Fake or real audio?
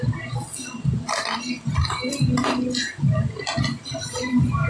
real